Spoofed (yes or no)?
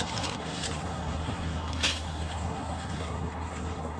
yes